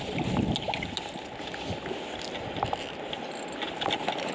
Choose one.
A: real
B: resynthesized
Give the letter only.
A